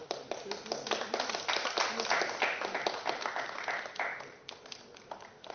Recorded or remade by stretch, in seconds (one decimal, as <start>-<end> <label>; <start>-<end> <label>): 0.0-4.1 recorded; 4.1-4.6 remade; 4.6-5.5 recorded